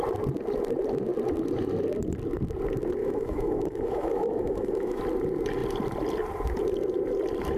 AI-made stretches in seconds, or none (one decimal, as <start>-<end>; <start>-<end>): 3.0-5.0